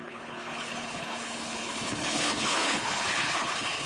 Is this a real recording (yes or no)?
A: no